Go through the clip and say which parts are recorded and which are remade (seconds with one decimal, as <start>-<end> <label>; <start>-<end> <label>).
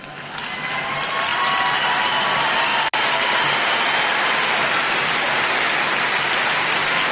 0.0-7.1 recorded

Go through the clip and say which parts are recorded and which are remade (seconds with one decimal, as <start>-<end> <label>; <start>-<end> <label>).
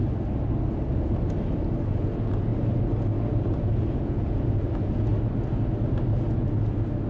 0.0-1.9 recorded; 1.9-2.5 remade; 2.5-3.1 recorded; 3.1-5.1 remade; 5.1-7.1 recorded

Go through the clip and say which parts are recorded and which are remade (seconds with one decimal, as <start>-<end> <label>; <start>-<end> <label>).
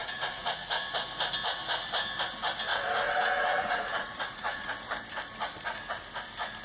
0.0-0.8 remade; 0.8-2.7 recorded; 2.7-4.7 remade; 4.7-6.6 recorded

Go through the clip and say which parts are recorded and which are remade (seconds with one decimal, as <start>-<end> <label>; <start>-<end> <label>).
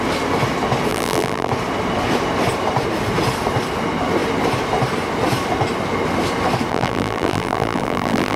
0.0-0.9 recorded; 0.9-1.5 remade; 1.5-6.7 recorded; 6.7-8.4 remade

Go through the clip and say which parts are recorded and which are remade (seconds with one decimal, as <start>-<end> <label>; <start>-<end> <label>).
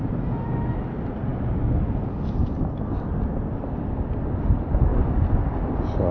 0.0-6.1 recorded